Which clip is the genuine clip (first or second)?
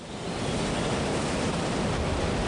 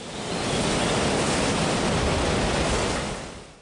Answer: second